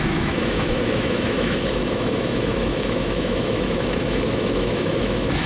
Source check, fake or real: fake